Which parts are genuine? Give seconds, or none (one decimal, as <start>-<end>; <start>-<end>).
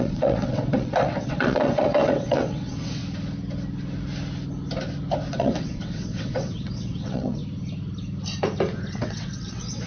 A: 3.0-5.3; 7.4-9.0